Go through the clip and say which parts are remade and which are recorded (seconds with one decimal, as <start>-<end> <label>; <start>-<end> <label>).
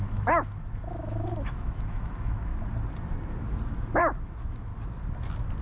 0.0-2.5 remade; 2.5-4.2 recorded; 4.2-4.7 remade; 4.7-5.6 recorded